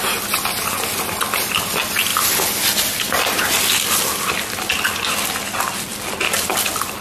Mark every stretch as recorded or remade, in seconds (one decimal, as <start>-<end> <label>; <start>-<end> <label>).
0.0-7.0 recorded